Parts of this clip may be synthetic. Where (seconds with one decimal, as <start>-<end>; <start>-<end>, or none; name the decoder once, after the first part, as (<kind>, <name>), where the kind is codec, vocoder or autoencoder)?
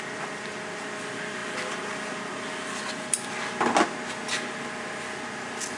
none